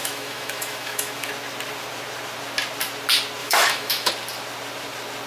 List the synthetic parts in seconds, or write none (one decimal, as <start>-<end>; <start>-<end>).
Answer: 0.0-1.3; 3.4-4.1